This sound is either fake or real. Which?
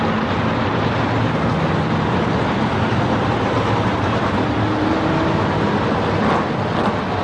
real